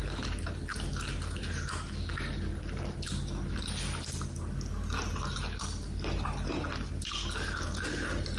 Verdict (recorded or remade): recorded